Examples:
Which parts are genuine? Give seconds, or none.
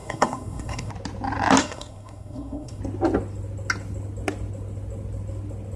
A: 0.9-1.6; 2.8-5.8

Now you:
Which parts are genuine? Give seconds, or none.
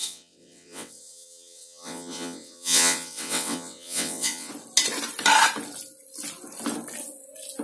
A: 4.5-7.6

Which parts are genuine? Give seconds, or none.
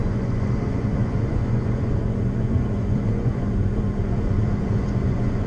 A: none